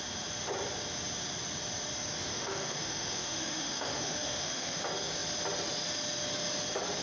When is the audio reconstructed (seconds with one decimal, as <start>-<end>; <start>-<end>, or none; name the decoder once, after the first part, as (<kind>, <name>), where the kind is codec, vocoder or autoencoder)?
2.3-4.8 (autoencoder, DAC-VAE)